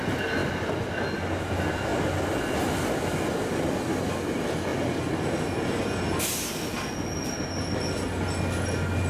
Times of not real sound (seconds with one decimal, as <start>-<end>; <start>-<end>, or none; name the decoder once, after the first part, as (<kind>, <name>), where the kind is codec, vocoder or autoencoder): none